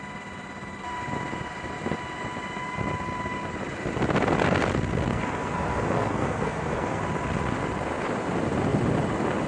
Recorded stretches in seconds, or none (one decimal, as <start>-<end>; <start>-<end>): 0.0-5.1; 7.0-9.5